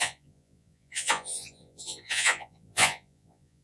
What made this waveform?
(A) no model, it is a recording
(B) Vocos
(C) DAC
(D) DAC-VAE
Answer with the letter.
B